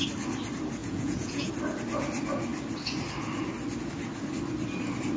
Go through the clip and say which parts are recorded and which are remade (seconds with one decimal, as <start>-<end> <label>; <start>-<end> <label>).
0.0-0.8 recorded; 0.8-1.5 remade; 1.5-5.2 recorded